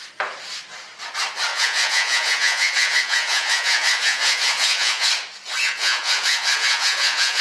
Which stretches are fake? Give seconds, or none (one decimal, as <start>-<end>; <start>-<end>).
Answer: 1.5-5.1; 5.6-7.4